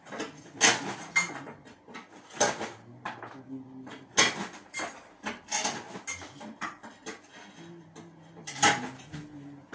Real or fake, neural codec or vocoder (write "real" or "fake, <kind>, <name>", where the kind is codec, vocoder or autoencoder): real